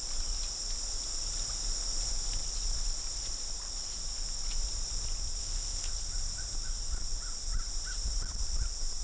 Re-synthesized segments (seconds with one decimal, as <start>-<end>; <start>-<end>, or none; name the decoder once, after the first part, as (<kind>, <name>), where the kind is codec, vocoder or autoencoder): 5.4-5.9 (codec, ZipCodec)